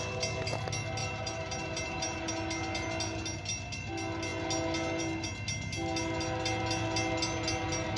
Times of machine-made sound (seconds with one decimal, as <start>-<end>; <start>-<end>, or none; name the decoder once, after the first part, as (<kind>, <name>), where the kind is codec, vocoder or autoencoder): 1.0-2.3 (vocoder, BigVGAN v2)